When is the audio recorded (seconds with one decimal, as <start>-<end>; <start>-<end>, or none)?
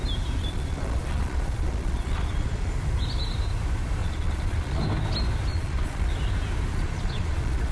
0.0-0.4; 2.7-4.0; 4.8-5.5; 6.1-6.7